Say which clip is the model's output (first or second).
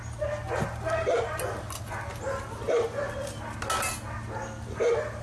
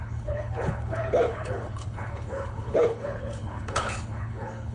second